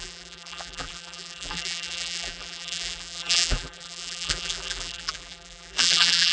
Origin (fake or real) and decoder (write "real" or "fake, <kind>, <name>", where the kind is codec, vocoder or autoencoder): fake, vocoder, BigVGAN v2